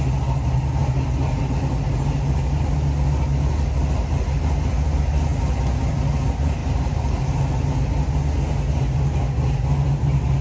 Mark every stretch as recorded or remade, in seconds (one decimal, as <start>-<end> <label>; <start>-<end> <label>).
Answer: 0.0-6.6 recorded; 6.6-7.1 remade; 7.1-10.4 recorded